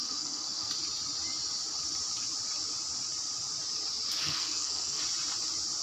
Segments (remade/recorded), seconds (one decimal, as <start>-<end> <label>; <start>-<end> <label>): 0.0-0.7 remade; 0.7-4.2 recorded; 4.2-5.0 remade; 5.0-5.8 recorded